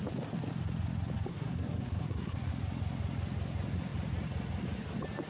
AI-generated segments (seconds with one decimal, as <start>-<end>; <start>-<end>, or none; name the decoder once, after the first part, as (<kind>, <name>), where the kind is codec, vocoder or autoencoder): 1.3-2.5 (codec, SNAC)